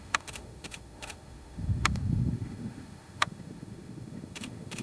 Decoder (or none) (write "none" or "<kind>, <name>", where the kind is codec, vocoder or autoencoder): autoencoder, DAC-VAE